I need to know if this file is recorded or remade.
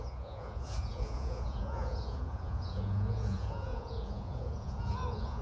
remade